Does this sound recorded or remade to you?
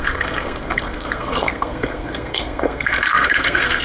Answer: remade